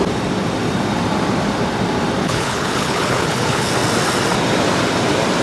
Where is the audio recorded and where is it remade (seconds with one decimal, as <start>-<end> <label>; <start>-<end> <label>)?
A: 0.0-2.2 recorded; 2.2-3.7 remade; 3.7-5.4 recorded